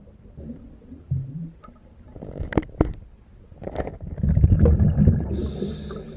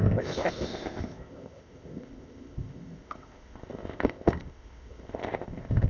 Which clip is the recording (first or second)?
first